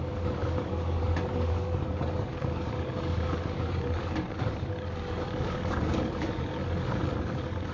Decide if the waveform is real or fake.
fake